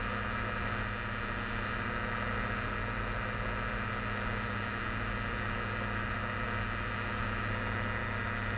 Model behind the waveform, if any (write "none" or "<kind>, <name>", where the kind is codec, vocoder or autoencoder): none